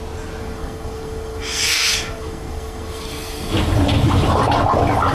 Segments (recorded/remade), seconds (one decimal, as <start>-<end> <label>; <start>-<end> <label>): 0.0-0.4 recorded; 0.4-3.5 remade; 3.5-5.1 recorded